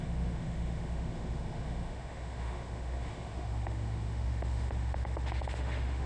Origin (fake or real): fake